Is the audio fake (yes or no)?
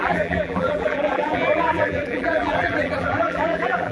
yes